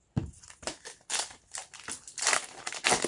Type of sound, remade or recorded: recorded